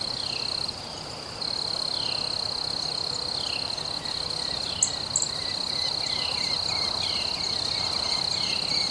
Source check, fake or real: real